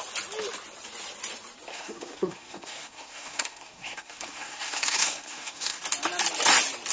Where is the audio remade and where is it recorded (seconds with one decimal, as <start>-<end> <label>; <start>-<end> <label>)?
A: 0.0-1.7 recorded; 1.7-5.8 remade; 5.8-6.9 recorded